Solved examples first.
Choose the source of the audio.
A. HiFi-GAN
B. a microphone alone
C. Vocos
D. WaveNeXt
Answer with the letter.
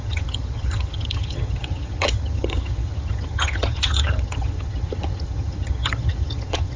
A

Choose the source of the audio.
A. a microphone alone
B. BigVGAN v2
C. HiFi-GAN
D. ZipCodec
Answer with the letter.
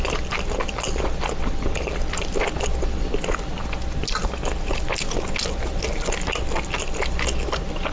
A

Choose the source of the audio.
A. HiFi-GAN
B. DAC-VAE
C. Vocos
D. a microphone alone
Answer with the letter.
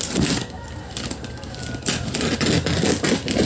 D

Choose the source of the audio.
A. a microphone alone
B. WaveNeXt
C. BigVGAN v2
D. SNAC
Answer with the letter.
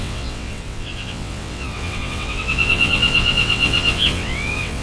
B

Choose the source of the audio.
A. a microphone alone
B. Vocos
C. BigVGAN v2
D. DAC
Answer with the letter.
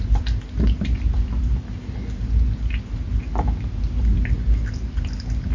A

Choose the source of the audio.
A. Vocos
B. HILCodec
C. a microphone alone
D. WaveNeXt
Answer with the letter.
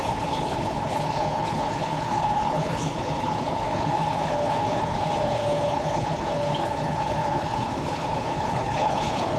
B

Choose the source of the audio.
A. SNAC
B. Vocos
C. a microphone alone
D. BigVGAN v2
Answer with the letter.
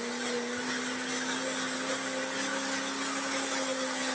C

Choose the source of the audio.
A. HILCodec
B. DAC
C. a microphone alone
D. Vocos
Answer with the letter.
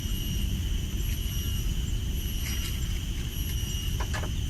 C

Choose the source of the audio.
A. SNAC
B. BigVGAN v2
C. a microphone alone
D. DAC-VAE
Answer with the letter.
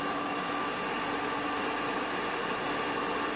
C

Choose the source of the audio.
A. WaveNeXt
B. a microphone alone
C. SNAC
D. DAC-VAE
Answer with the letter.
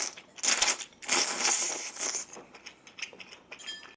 B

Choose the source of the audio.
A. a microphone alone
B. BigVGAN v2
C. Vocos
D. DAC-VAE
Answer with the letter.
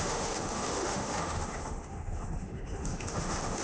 D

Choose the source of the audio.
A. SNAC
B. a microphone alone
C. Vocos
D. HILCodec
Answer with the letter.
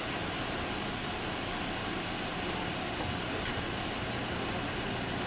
B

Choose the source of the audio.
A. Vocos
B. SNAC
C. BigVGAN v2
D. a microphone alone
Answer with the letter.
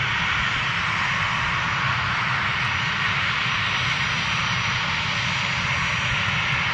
D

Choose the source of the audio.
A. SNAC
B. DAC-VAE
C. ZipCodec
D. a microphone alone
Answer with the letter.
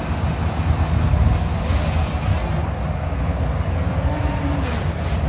D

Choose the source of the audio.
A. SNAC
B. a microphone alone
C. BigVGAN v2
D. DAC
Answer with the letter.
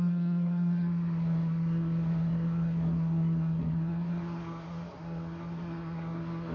A